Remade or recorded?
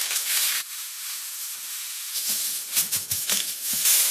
remade